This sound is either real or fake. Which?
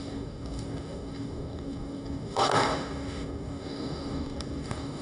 fake